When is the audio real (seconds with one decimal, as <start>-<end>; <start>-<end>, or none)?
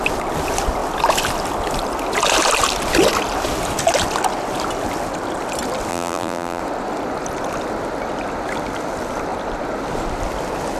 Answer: 0.0-5.9; 6.6-10.8